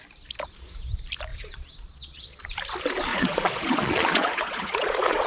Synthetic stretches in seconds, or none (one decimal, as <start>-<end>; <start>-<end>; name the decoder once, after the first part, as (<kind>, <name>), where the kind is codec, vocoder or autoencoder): 1.3-2.5 (vocoder, Vocos); 3.1-5.3